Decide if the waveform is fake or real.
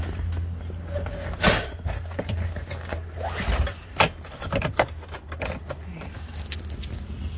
real